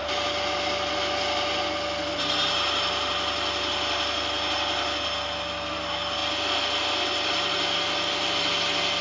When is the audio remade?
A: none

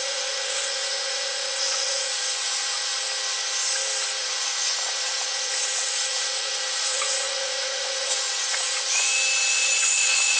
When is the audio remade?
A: 0.0-2.9 (vocoder, Vocos); 4.2-9.1; 9.6-10.4

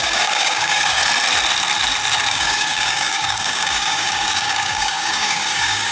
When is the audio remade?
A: 0.0-1.0 (codec, DAC); 2.3-5.9

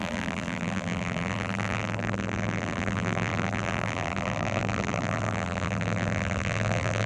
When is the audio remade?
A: 0.0-7.1 (vocoder, BigVGAN v2)

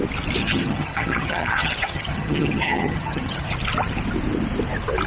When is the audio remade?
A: 0.4-3.5 (vocoder, HiFi-GAN)